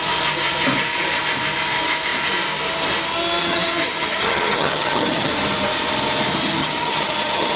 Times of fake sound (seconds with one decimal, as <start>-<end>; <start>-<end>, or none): 3.4-5.3; 6.6-7.6